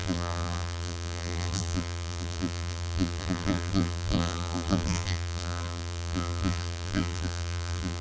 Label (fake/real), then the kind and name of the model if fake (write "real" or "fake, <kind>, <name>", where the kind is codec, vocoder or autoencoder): fake, vocoder, BigVGAN v2